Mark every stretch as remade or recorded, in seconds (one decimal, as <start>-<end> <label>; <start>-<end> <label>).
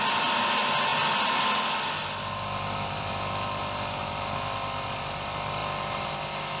0.0-6.6 recorded